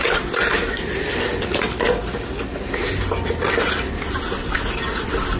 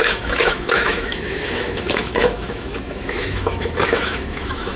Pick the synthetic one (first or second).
second